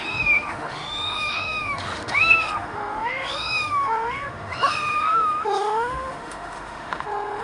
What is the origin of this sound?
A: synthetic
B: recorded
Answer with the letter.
A